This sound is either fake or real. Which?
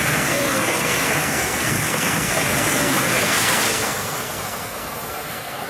fake